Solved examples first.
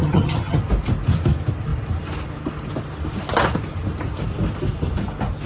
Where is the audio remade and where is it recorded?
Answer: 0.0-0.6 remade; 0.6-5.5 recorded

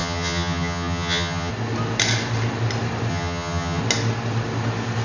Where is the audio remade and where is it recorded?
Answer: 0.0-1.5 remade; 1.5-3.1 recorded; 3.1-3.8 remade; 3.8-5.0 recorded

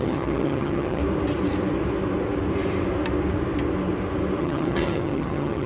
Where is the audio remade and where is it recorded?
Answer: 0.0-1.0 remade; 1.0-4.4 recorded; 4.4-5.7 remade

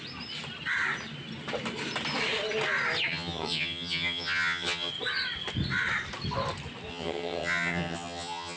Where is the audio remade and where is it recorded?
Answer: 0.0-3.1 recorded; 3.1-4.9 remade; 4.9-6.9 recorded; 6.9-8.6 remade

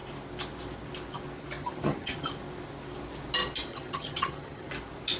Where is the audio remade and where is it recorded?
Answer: 0.0-1.6 recorded; 1.6-2.3 remade; 2.3-3.7 recorded; 3.7-4.7 remade; 4.7-5.2 recorded

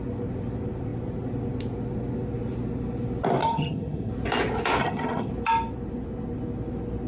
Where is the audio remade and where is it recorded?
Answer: 0.0-3.4 recorded; 3.4-4.1 remade; 4.1-4.8 recorded; 4.8-5.3 remade; 5.3-7.1 recorded

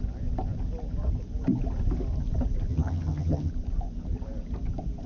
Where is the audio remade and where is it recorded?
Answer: 0.0-2.7 recorded; 2.7-3.5 remade; 3.5-5.1 recorded